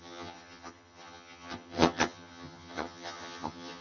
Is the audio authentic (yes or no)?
no